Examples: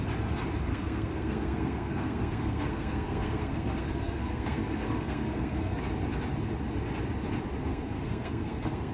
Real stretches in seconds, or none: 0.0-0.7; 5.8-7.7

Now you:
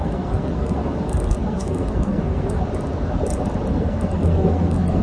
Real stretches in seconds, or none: 2.6-3.7

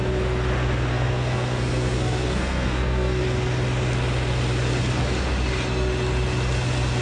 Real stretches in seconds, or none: 0.0-0.9; 3.2-7.0

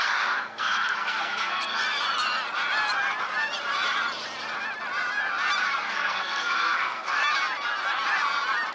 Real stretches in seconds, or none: 1.8-5.8; 7.2-8.7

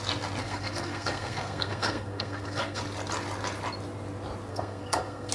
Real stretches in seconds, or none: 0.0-0.4; 2.8-4.5

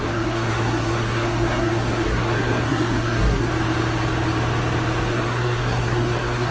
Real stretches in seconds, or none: 3.5-5.1

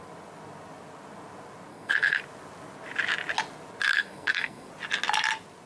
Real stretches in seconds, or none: 0.0-1.7; 2.2-3.9; 4.7-5.7

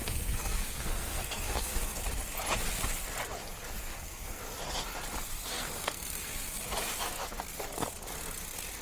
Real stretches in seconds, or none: 2.0-3.8; 4.4-5.5; 6.6-8.8